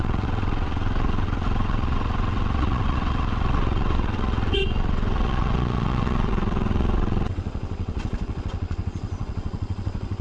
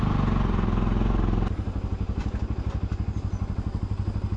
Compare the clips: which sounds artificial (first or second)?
first